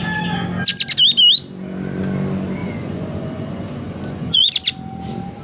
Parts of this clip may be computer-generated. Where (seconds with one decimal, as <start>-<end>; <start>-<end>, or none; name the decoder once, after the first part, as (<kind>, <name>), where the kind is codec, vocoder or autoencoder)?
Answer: 2.6-4.5 (vocoder, Vocos)